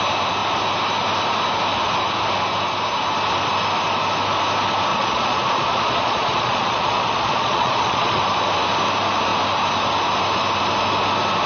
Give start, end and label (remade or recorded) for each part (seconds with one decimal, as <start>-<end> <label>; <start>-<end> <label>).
0.0-4.9 recorded; 4.9-8.2 remade; 8.2-11.5 recorded